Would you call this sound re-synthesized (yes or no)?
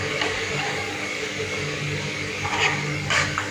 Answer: yes